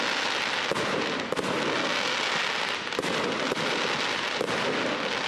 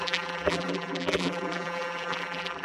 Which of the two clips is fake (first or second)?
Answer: second